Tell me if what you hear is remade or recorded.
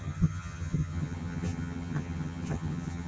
remade